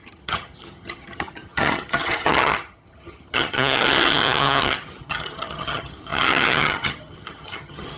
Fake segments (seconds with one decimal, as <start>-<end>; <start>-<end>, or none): 0.0-8.0